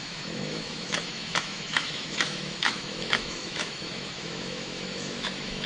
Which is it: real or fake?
fake